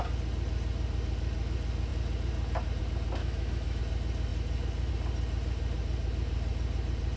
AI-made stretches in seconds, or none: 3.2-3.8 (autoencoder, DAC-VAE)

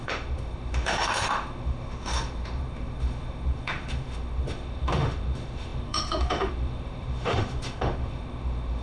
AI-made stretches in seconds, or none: 0.0-8.8 (autoencoder, DAC-VAE)

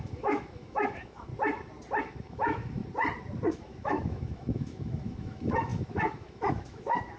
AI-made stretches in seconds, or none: 0.0-1.3 (autoencoder, DAC-VAE); 2.0-2.8; 3.5-7.2

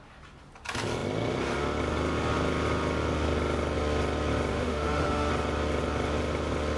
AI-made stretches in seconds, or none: 4.5-5.3 (autoencoder, DAC-VAE)

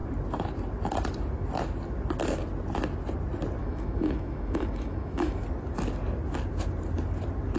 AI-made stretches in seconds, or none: 3.6-5.4 (autoencoder, DAC-VAE)

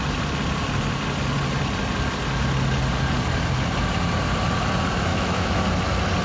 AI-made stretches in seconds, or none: 5.1-5.6 (autoencoder, DAC-VAE)

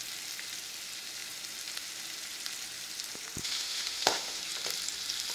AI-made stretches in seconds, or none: 3.4-4.4 (autoencoder, DAC-VAE)

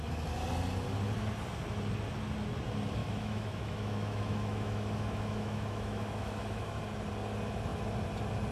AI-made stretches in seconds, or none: 3.0-6.7 (autoencoder, DAC-VAE)